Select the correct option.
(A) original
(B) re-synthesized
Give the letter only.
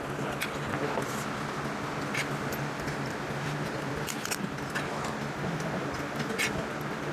A